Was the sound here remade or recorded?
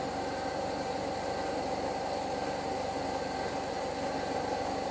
recorded